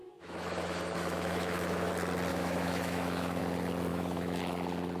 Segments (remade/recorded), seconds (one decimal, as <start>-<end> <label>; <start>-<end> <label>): 0.0-1.9 remade; 1.9-2.3 recorded; 2.3-3.4 remade; 3.4-3.9 recorded; 3.9-4.4 remade; 4.4-5.0 recorded